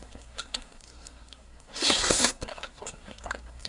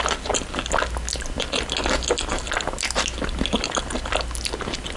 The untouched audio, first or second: second